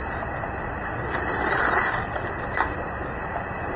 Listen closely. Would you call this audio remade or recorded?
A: recorded